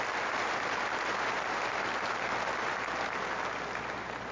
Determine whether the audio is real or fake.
real